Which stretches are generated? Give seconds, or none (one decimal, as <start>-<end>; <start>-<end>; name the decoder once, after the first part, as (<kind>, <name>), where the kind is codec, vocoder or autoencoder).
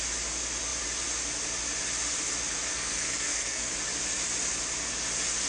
2.7-3.7 (codec, SNAC)